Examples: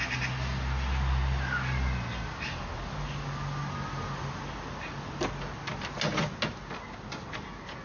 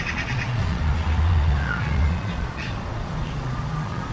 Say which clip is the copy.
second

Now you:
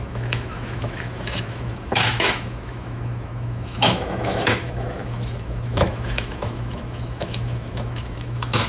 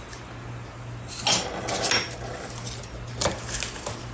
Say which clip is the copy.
first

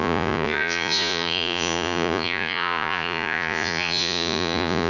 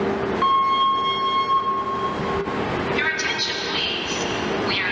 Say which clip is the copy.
first